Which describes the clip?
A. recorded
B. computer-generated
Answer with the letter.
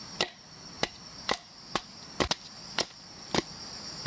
A